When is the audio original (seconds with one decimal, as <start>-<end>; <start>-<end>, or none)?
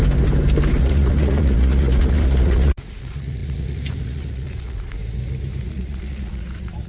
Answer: 0.0-0.8; 5.0-5.6